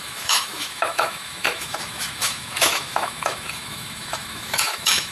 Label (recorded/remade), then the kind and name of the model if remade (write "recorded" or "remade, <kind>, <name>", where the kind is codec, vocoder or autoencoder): remade, autoencoder, DAC-VAE